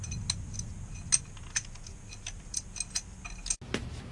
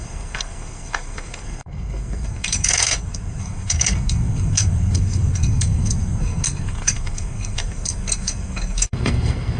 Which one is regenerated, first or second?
second